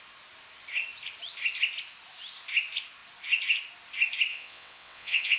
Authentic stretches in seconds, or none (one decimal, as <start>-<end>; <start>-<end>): 0.0-4.3